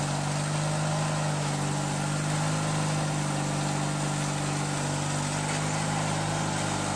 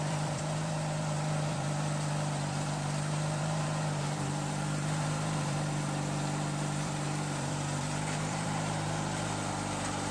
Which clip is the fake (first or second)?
second